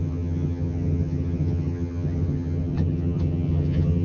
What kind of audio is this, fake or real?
fake